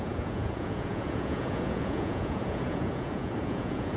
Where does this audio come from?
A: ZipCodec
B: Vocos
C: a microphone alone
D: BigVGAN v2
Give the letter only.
B